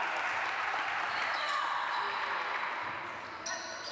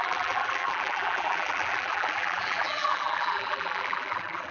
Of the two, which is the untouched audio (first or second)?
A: first